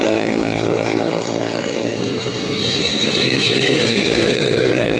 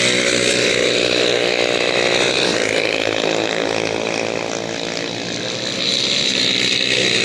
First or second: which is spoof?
first